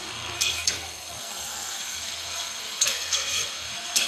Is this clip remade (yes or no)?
yes